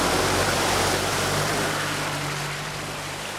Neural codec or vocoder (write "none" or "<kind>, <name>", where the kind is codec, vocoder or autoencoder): vocoder, BigVGAN v2